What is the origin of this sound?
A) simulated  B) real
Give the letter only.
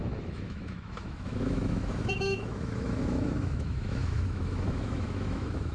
A